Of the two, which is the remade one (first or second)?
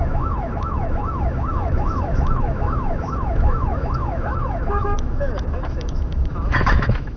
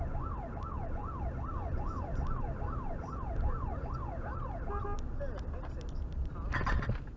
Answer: first